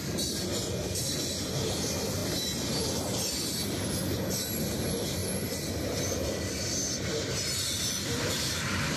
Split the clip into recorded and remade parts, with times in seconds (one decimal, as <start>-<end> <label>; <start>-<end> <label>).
0.0-2.2 remade; 2.2-4.6 recorded; 4.6-5.2 remade; 5.2-7.0 recorded; 7.0-9.0 remade